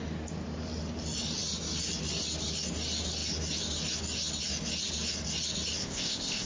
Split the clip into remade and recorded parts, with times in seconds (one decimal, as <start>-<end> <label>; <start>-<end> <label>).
0.0-5.8 recorded; 5.8-6.5 remade